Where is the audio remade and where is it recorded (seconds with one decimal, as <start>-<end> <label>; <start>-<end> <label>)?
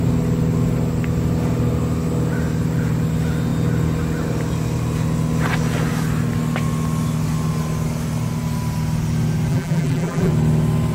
0.0-9.5 recorded; 9.5-10.3 remade; 10.3-10.9 recorded